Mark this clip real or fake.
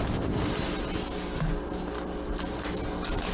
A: real